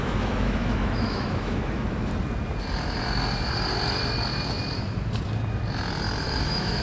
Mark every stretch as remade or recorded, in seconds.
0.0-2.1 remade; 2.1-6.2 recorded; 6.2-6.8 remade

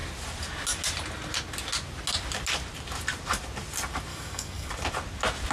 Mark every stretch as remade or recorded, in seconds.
0.0-4.1 recorded; 4.1-4.7 remade; 4.7-5.5 recorded

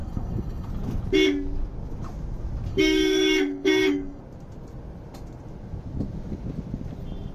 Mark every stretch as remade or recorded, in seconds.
0.0-0.7 remade; 0.7-2.7 recorded; 2.7-4.2 remade; 4.2-7.3 recorded

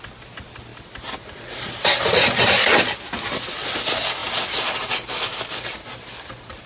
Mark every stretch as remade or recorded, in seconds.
0.0-6.7 recorded